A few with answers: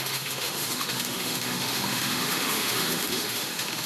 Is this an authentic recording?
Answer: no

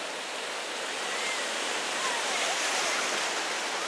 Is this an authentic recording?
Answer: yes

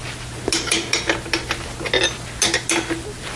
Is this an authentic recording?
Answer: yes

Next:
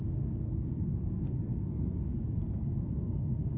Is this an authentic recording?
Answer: no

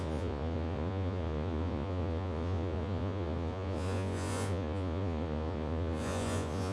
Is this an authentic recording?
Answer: no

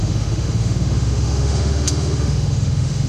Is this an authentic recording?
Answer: no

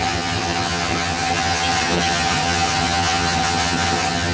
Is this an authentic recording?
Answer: no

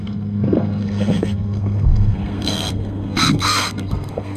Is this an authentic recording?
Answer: no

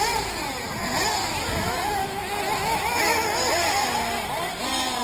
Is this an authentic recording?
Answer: yes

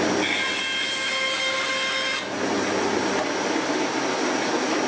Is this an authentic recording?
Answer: yes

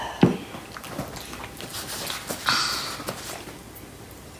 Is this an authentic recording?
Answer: yes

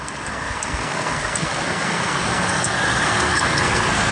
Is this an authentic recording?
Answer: no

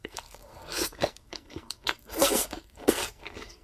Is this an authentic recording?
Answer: no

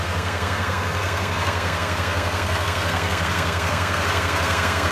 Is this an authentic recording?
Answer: no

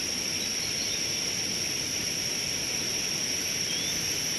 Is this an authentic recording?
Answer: yes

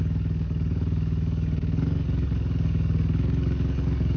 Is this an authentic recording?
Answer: no